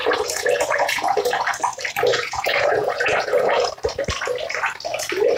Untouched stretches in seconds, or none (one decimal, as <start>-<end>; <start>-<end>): 1.4-2.1; 3.7-5.4